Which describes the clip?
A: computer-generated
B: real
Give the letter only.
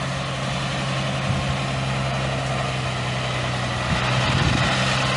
B